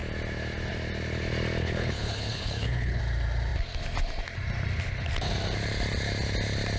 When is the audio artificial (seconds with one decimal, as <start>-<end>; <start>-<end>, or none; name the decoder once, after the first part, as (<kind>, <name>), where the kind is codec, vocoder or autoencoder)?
1.6-3.0 (codec, HILCodec)